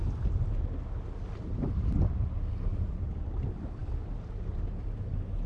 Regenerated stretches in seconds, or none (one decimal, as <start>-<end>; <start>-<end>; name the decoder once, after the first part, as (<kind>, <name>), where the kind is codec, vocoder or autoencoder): none